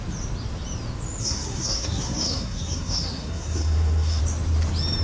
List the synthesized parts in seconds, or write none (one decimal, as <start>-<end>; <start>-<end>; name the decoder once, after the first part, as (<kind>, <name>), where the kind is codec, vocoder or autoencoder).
1.2-4.2 (codec, SNAC)